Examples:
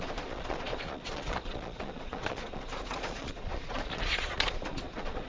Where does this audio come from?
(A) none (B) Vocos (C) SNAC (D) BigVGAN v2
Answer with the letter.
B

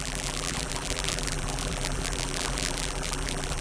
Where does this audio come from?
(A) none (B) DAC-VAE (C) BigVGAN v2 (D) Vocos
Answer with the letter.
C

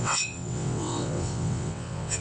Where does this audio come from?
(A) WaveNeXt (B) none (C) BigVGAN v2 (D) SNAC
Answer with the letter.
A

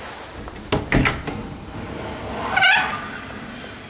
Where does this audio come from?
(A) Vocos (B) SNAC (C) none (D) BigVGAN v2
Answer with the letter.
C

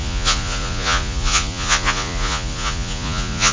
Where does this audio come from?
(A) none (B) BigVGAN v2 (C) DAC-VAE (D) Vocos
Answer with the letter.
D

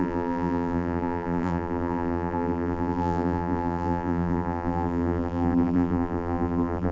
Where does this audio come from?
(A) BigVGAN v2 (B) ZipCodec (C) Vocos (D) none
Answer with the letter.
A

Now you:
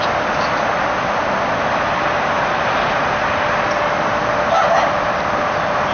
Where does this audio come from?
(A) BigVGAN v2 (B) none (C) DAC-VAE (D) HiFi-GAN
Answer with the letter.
B